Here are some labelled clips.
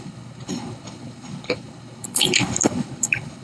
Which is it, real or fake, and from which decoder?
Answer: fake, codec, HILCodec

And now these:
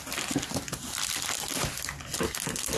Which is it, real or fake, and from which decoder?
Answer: real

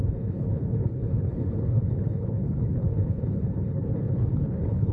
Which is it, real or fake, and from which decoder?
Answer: fake, codec, HILCodec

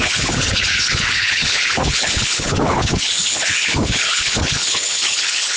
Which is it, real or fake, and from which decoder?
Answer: fake, codec, HILCodec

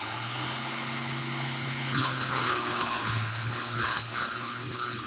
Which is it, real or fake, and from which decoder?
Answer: fake, codec, HILCodec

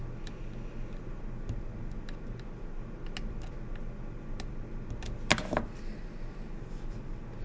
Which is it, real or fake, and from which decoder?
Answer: real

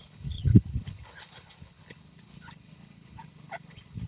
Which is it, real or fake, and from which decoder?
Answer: fake, codec, HILCodec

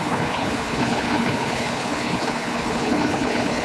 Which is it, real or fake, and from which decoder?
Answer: fake, codec, HILCodec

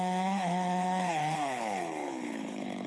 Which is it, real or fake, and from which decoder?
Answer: fake, codec, HILCodec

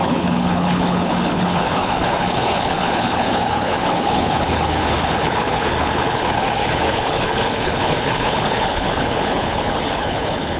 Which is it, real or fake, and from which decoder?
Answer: fake, codec, HILCodec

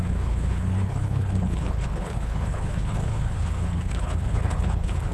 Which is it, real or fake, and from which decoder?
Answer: fake, codec, HILCodec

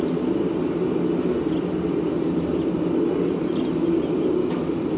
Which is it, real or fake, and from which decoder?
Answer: real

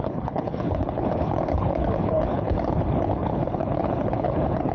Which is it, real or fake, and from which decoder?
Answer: fake, codec, HILCodec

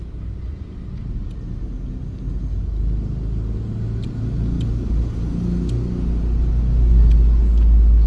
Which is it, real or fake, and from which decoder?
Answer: real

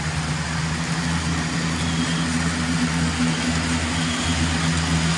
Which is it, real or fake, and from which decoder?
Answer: real